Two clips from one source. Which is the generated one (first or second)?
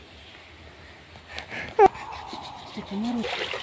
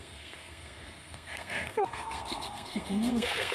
second